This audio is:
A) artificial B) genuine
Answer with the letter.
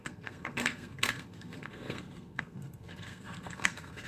A